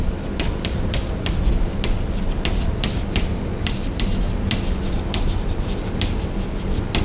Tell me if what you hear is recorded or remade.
recorded